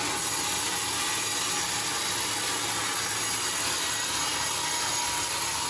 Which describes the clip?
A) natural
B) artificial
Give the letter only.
A